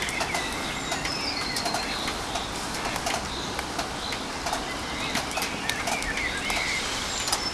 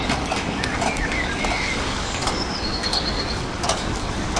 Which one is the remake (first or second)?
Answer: second